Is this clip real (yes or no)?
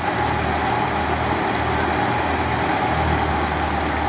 yes